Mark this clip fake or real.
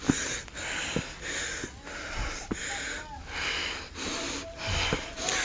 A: real